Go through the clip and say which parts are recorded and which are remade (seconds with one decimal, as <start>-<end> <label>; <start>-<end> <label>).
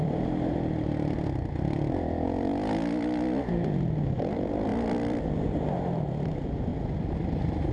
0.0-2.5 remade; 2.5-4.2 recorded; 4.2-7.7 remade